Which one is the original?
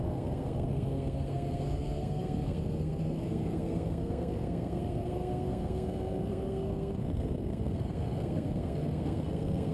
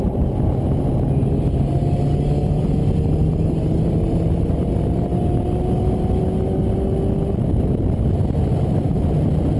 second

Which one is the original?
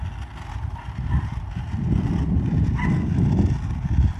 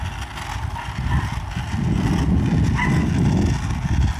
second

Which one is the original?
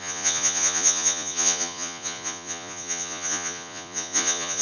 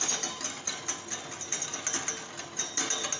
second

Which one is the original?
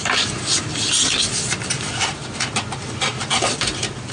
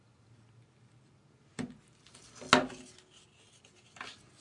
second